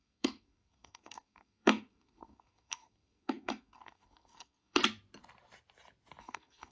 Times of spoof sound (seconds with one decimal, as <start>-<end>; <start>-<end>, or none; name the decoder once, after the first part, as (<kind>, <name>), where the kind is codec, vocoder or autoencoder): 0.0-4.8 (codec, SNAC); 6.2-6.7